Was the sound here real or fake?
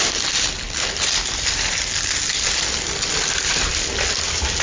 real